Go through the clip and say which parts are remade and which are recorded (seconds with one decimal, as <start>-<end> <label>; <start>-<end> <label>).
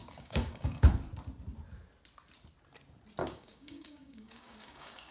0.0-0.9 remade; 0.9-3.2 recorded; 3.2-5.1 remade